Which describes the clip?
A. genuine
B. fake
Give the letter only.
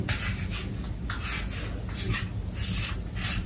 A